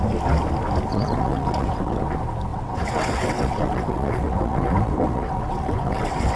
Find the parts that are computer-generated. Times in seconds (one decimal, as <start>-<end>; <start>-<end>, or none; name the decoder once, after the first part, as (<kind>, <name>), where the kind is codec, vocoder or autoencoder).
0.9-2.0 (vocoder, WaveNeXt); 2.5-6.4